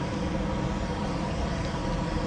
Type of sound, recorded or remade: recorded